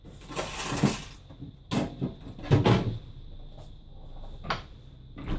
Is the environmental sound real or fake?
real